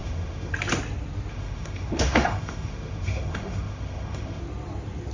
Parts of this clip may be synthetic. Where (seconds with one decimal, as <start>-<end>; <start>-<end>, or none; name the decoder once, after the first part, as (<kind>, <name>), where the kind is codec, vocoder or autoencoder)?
0.0-0.5 (autoencoder, DAC-VAE); 1.3-4.4